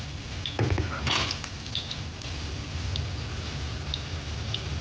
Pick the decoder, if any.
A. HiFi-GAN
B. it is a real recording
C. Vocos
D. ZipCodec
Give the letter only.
B